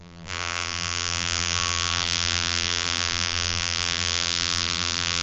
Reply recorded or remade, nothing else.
remade